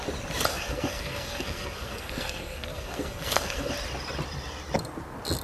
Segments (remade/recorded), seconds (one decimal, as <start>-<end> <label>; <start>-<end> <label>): 0.0-0.5 recorded; 0.5-3.7 remade; 3.7-5.4 recorded